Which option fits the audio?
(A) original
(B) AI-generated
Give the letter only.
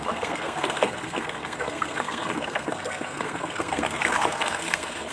B